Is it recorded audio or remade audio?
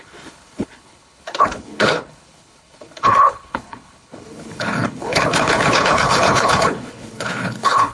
remade